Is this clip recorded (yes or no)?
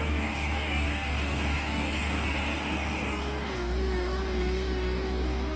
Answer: no